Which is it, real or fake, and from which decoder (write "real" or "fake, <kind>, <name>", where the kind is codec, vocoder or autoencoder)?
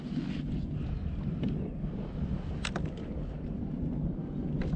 real